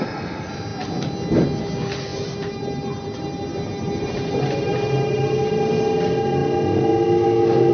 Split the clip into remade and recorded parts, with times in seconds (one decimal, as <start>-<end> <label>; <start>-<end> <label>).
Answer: 0.0-7.7 recorded